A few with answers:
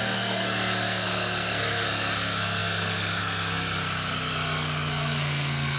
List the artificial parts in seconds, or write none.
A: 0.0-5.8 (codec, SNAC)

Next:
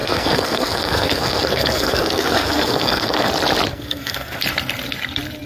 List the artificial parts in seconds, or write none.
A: 0.0-3.3 (codec, SNAC); 3.7-4.4

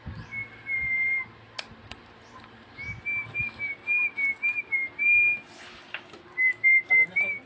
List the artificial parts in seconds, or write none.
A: none

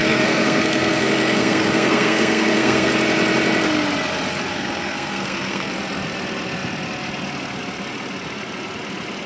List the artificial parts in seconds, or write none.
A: 0.0-2.9 (codec, SNAC); 4.5-5.7

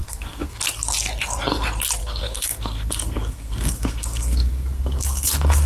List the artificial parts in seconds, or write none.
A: 0.0-0.6 (codec, SNAC); 2.0-5.7

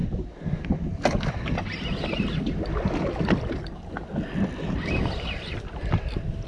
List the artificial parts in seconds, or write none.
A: none